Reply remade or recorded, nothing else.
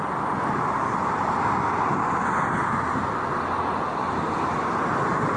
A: recorded